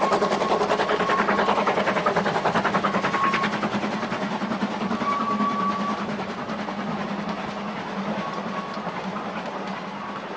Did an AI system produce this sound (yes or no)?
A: no